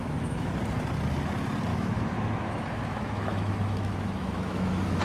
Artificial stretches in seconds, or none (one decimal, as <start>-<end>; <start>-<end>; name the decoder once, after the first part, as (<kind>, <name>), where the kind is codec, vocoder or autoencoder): 0.0-0.5 (autoencoder, DAC-VAE); 1.7-5.0